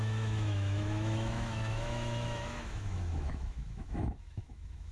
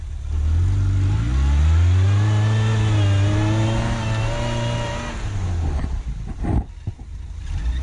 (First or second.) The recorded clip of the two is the second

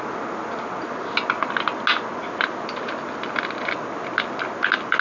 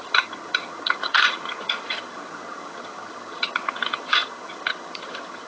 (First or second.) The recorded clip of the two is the first